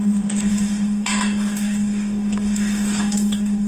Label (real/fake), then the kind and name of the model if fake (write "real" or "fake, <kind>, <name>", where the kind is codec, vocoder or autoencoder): fake, codec, DAC